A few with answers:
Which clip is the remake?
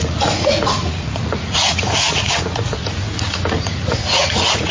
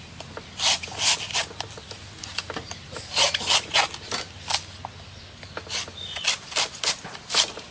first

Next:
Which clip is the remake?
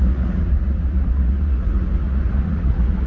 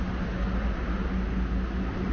first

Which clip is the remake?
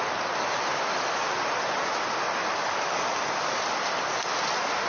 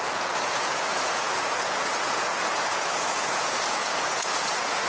second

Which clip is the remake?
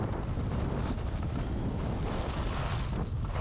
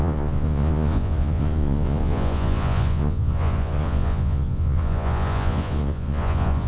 second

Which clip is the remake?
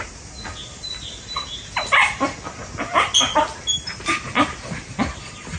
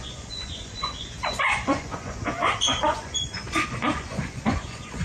second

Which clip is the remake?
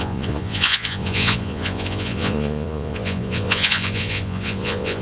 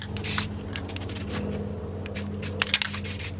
first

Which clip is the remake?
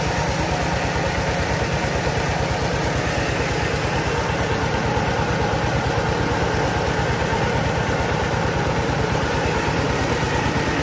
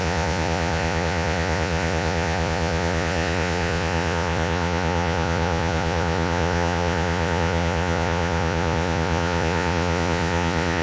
second